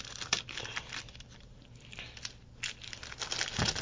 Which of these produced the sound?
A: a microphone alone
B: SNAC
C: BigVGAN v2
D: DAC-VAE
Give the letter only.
A